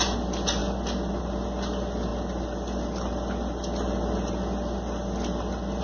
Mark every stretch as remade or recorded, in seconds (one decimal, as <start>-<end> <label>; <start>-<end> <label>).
0.0-5.8 recorded